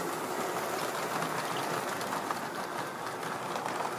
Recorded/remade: recorded